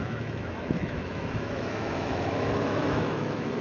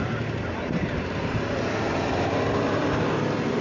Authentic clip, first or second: second